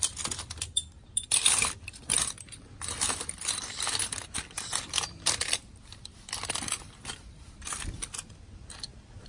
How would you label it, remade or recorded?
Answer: remade